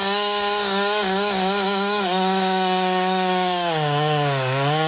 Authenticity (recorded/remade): remade